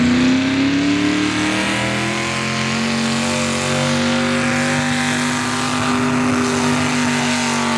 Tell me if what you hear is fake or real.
real